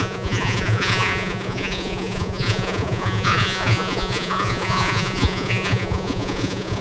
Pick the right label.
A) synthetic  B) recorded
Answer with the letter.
A